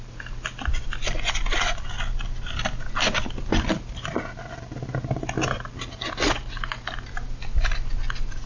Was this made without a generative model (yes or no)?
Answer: yes